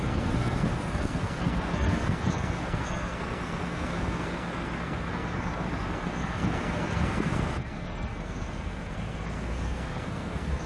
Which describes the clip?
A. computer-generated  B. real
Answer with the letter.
A